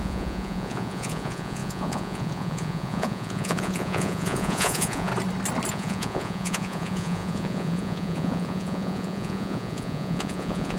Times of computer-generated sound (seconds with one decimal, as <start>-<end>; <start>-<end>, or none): 0.0-5.1; 5.7-10.8